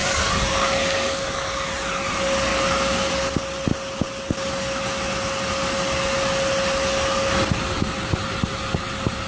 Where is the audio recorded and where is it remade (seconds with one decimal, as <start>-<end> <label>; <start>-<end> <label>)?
0.0-1.7 remade; 1.7-2.5 recorded; 2.5-3.1 remade; 3.1-9.3 recorded